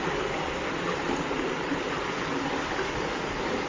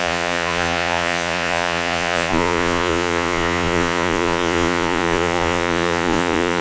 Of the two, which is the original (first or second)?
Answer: first